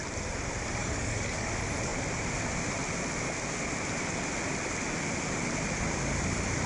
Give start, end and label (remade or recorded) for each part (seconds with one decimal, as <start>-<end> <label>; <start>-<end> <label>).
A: 0.0-0.8 recorded; 0.8-1.5 remade; 1.5-6.7 recorded